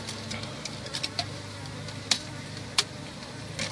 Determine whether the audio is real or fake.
real